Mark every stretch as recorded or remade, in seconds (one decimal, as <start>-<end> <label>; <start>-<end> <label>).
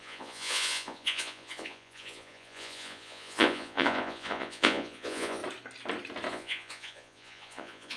0.0-5.4 remade; 5.4-6.3 recorded; 6.3-8.0 remade